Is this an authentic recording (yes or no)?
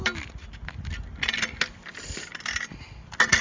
yes